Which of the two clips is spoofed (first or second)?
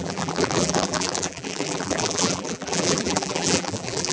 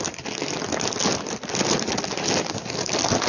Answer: first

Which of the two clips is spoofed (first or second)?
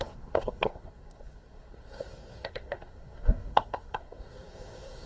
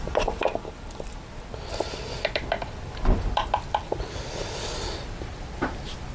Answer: first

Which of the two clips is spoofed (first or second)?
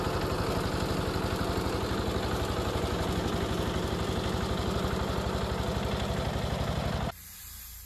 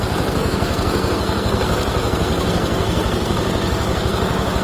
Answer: second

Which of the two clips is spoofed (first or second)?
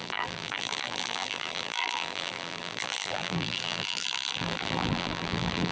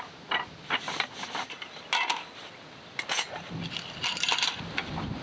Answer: first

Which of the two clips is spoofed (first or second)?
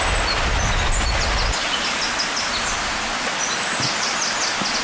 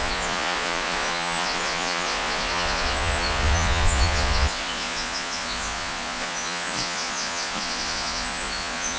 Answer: second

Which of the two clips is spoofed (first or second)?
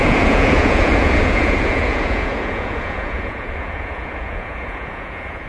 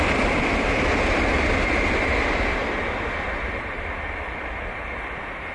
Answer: first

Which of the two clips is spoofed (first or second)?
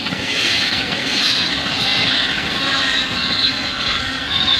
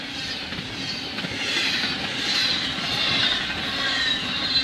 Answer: first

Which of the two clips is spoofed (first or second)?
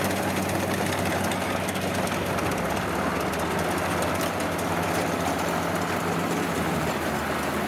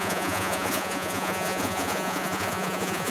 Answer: second